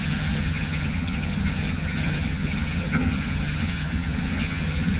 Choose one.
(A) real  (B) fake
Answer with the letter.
B